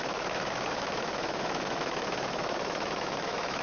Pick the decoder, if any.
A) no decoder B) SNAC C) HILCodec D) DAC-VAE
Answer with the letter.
D